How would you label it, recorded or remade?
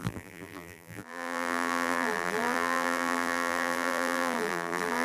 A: remade